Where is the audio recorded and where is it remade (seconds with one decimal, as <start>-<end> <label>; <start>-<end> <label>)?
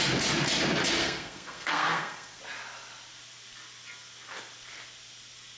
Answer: 0.0-1.0 recorded; 1.0-2.4 remade; 2.4-5.6 recorded